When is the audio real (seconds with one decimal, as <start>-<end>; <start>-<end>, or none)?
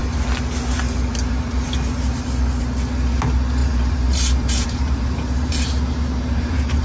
0.0-3.6